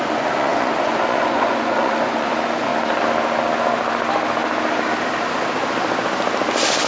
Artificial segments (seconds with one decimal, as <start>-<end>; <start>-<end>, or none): 0.0-2.7

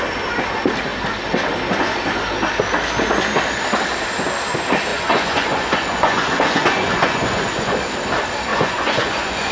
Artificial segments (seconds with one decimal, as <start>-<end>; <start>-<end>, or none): 4.9-7.8; 8.5-9.5

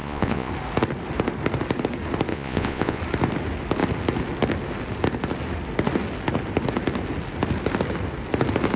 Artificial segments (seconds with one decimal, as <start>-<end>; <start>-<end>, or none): 0.0-0.5; 2.3-3.0

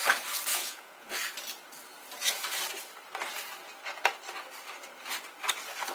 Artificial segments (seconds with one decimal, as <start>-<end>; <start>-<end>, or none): 0.5-1.1

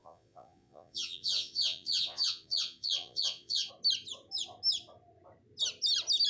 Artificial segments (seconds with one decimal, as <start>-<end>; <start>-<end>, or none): 0.0-3.7